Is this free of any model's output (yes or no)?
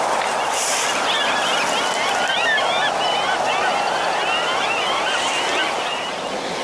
yes